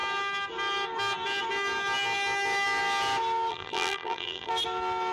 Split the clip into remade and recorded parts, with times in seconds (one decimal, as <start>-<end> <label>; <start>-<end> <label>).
0.0-3.5 recorded; 3.5-4.5 remade; 4.5-5.1 recorded